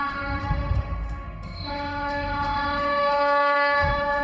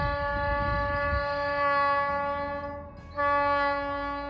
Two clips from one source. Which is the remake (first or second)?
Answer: first